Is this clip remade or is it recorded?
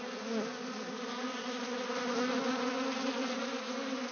recorded